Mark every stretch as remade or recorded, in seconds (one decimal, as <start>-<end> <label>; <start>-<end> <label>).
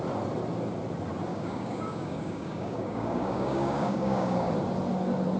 0.0-1.3 recorded; 1.3-4.5 remade; 4.5-5.4 recorded